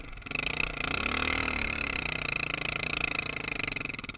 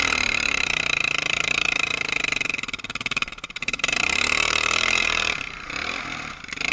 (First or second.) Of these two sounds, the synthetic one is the second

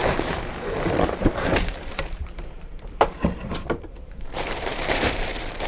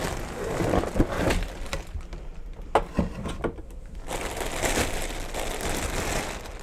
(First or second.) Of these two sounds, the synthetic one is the first